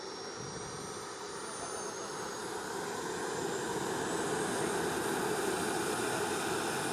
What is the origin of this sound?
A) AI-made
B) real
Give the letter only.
B